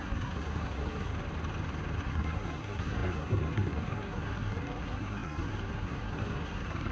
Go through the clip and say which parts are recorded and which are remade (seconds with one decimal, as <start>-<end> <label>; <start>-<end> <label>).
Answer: 0.0-1.1 remade; 1.1-2.0 recorded; 2.0-6.9 remade